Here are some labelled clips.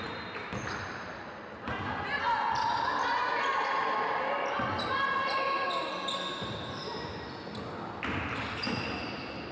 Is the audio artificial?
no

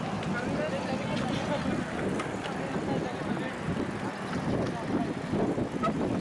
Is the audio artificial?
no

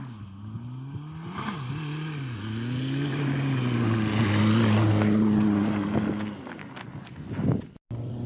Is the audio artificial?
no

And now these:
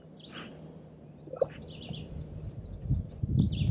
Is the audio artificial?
no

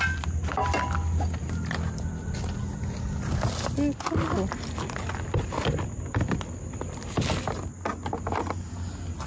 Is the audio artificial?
no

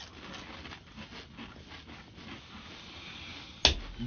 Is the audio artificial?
no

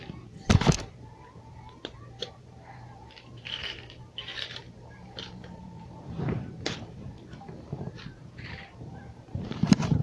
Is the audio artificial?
yes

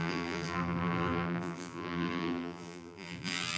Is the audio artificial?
yes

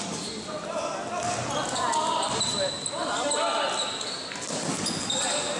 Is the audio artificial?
no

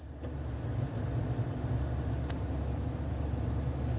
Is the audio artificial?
no